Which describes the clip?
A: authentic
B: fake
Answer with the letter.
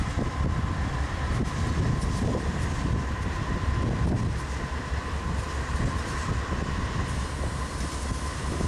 A